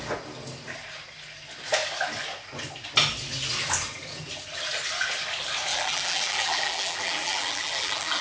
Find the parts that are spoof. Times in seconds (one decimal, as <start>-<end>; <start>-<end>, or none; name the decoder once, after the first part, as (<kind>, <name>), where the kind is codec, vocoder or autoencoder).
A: 5.7-8.2 (vocoder, BigVGAN v2)